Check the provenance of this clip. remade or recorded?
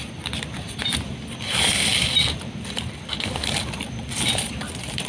remade